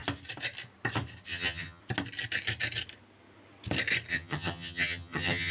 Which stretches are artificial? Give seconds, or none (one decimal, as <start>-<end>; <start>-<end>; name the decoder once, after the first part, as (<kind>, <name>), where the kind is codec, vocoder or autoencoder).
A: 1.3-1.8 (vocoder, HiFi-GAN); 4.1-5.5